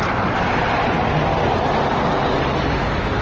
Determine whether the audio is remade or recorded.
recorded